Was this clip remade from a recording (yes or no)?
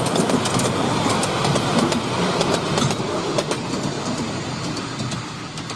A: no